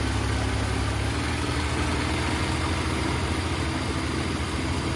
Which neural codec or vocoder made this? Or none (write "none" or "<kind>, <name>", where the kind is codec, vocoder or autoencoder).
none